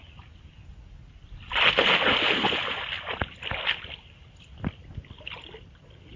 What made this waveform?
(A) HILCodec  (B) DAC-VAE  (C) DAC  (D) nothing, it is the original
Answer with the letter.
D